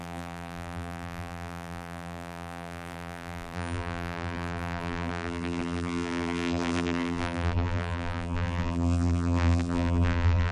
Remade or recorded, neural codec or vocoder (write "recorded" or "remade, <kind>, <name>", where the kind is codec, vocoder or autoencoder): remade, vocoder, BigVGAN v2